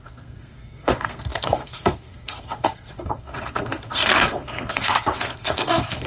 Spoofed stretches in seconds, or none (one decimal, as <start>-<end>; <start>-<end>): 0.0-6.1